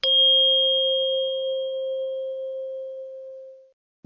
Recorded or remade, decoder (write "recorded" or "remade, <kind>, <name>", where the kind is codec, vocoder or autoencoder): recorded